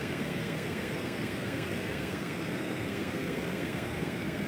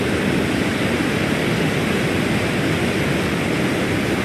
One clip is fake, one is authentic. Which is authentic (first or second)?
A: second